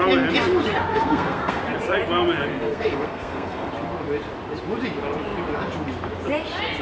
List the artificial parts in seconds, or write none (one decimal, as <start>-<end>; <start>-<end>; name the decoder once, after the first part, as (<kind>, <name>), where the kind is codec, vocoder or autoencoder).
0.9-1.6 (codec, SNAC); 2.5-3.7